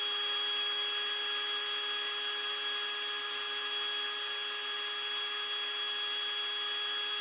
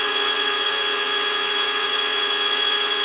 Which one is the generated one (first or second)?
second